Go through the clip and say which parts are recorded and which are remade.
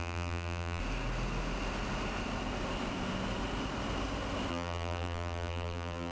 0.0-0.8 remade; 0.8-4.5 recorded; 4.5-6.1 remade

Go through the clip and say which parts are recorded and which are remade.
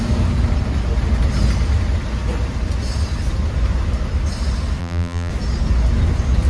0.0-4.8 recorded; 4.8-5.3 remade; 5.3-6.5 recorded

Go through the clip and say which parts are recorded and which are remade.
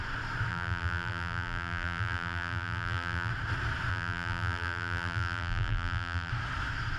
0.0-0.5 recorded; 0.5-3.3 remade; 3.3-3.9 recorded; 3.9-6.3 remade; 6.3-7.0 recorded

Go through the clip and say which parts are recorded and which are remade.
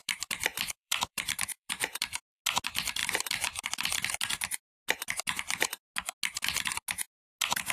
0.0-2.4 remade; 2.4-3.0 recorded; 3.0-3.7 remade; 3.7-7.7 recorded